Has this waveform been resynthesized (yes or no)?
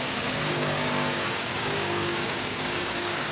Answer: yes